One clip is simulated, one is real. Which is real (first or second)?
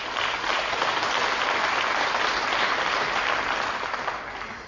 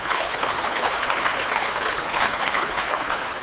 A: first